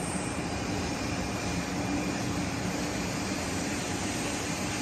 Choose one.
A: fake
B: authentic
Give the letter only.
A